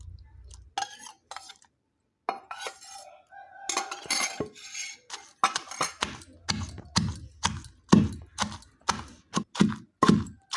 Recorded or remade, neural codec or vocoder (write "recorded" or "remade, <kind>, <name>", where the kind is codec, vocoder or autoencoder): recorded